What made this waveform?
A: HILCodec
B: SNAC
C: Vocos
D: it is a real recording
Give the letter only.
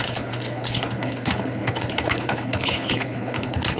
A